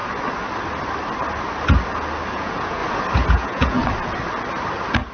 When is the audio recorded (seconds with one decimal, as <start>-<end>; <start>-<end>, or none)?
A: 0.0-2.3; 2.8-3.3; 3.8-5.1